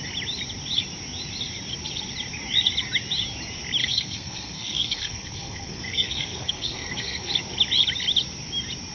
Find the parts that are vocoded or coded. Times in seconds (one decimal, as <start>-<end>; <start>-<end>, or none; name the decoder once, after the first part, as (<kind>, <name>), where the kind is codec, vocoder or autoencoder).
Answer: 3.8-7.3 (codec, SNAC)